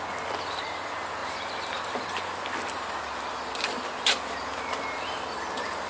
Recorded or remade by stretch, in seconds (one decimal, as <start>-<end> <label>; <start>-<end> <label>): 0.0-5.9 remade